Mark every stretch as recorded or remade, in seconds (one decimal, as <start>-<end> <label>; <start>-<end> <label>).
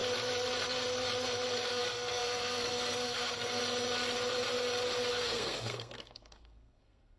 0.0-1.7 recorded; 1.7-3.6 remade; 3.6-5.1 recorded; 5.1-7.2 remade